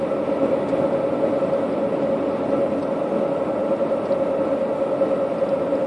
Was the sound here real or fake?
real